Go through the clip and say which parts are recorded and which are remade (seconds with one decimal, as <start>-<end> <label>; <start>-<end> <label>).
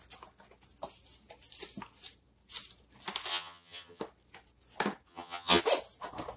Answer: 0.0-3.3 recorded; 3.3-4.0 remade; 4.0-5.1 recorded; 5.1-5.6 remade; 5.6-6.4 recorded